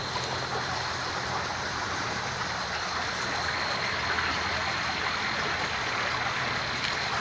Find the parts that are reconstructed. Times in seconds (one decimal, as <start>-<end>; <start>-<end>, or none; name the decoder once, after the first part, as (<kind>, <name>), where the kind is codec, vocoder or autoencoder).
none